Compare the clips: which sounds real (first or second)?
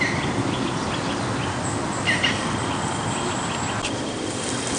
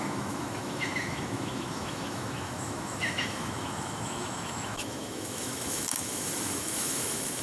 first